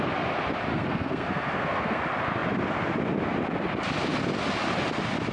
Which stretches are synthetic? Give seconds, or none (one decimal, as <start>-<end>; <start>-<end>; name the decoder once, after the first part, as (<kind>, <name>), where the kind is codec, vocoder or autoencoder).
0.7-2.0 (codec, SNAC)